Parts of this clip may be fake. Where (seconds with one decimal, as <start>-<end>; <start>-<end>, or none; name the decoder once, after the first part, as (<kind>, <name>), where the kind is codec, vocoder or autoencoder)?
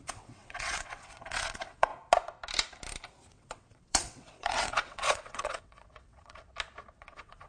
0.0-1.9 (vocoder, WaveNeXt); 3.3-6.5; 7.0-7.5